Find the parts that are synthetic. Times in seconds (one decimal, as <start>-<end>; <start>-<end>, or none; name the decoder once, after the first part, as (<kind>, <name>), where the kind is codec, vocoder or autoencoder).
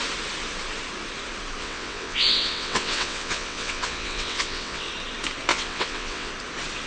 1.6-4.9 (vocoder, WaveNeXt); 5.5-6.3